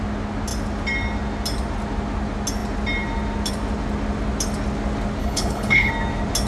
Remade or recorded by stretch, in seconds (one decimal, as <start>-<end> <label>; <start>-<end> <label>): 0.0-5.2 recorded; 5.2-5.9 remade; 5.9-6.5 recorded